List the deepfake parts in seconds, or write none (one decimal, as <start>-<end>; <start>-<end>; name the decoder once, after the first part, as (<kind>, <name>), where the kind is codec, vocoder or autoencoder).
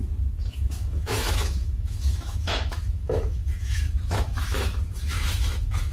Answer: 0.5-5.9 (autoencoder, DAC-VAE)